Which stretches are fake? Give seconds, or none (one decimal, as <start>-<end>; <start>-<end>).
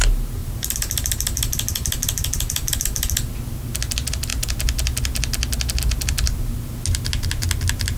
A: 0.4-3.4